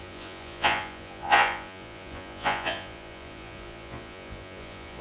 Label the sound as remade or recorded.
remade